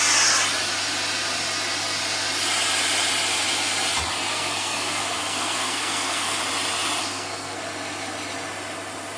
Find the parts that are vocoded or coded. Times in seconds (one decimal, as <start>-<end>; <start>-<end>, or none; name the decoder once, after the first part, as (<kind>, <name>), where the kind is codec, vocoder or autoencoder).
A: 4.3-6.4 (codec, SNAC); 7.0-7.6